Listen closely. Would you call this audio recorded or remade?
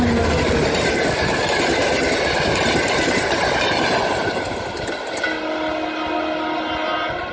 recorded